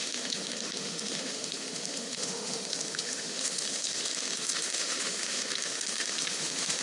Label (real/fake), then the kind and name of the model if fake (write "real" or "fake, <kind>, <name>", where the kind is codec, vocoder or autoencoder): fake, autoencoder, DAC-VAE